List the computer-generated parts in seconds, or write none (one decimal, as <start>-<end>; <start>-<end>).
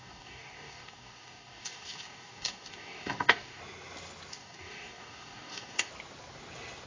0.0-3.6; 4.3-5.9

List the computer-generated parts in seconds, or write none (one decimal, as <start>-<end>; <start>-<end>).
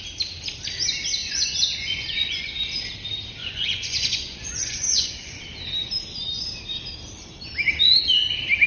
1.2-2.5; 3.4-5.4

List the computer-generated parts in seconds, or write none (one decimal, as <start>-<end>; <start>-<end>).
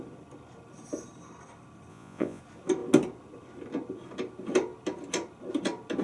1.9-2.4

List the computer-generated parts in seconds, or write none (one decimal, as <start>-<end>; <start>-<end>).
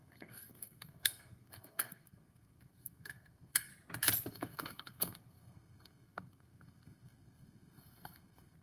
0.0-3.7; 4.3-8.6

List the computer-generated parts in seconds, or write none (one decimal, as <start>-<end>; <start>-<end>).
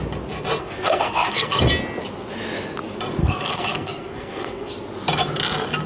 0.6-1.6; 3.2-4.7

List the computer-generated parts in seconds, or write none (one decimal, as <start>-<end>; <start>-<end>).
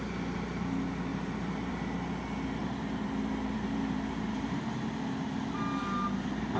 1.1-1.7; 2.6-4.6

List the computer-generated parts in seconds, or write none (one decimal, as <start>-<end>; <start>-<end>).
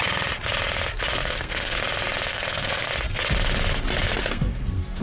1.2-1.8; 2.3-2.9; 4.2-5.0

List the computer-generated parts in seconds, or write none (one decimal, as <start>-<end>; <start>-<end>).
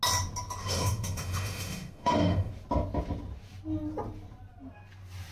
0.6-2.5